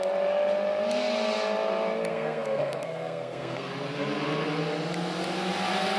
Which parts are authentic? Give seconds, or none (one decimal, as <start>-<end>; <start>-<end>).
0.0-2.1; 3.7-6.0